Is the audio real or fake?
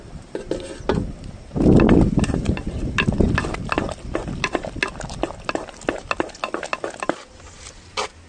real